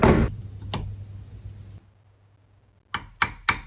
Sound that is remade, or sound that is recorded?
recorded